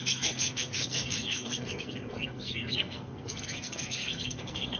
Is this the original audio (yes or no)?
no